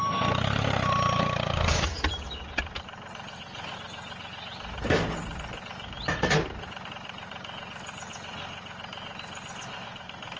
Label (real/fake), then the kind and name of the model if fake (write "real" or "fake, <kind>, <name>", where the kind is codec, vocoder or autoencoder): real